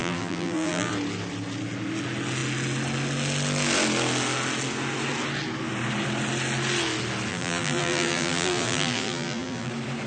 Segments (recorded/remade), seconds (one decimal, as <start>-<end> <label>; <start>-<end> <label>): 0.0-0.9 remade; 0.9-7.3 recorded; 7.3-9.7 remade; 9.7-10.1 recorded